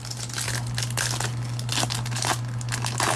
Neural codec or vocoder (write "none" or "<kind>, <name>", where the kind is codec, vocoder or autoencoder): none